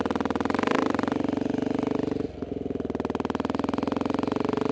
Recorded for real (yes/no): yes